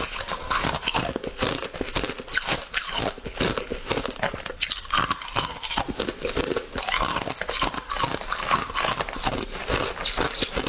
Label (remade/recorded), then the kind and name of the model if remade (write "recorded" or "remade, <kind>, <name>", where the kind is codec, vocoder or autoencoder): recorded